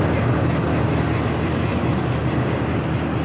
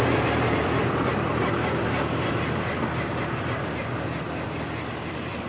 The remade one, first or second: second